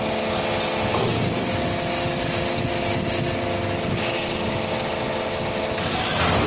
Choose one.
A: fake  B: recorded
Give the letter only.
B